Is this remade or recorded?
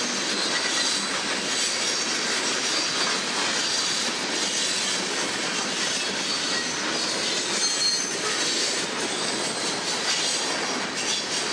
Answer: recorded